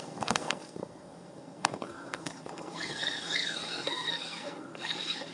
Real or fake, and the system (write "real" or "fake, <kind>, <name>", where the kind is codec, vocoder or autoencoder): fake, codec, SNAC